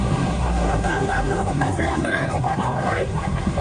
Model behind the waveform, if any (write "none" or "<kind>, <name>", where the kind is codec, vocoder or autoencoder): codec, SNAC